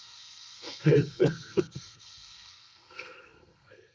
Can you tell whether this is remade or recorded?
remade